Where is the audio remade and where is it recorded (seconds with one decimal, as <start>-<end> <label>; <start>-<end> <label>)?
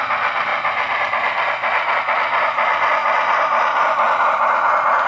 0.0-5.1 recorded